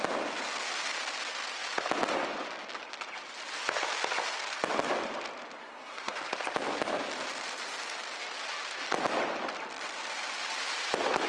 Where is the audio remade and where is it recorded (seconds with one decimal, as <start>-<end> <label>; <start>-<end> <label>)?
0.0-5.6 recorded; 5.6-6.2 remade; 6.2-11.3 recorded